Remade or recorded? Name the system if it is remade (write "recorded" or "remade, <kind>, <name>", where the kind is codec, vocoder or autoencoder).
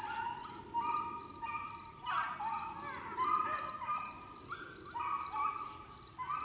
recorded